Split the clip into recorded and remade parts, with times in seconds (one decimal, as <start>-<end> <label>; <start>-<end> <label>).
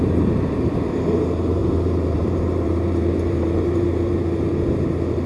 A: 0.0-5.3 remade